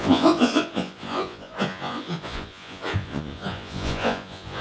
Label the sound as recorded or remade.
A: remade